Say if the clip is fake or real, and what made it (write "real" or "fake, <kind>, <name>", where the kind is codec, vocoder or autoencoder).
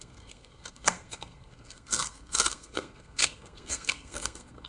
fake, codec, SNAC